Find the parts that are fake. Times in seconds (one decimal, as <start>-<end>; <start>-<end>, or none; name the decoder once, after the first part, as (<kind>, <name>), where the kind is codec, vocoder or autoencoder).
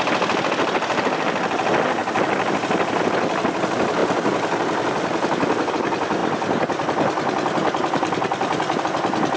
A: none